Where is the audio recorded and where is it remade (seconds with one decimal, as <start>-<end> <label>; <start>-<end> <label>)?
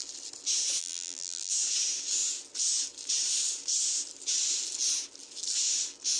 0.0-0.8 recorded; 0.8-1.5 remade; 1.5-6.2 recorded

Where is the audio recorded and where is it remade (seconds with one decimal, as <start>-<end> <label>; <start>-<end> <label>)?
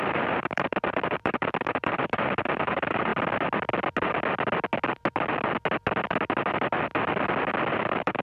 0.0-3.1 remade; 3.1-7.7 recorded; 7.7-8.2 remade